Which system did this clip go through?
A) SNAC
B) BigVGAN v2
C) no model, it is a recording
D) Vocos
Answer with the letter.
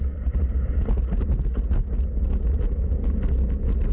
C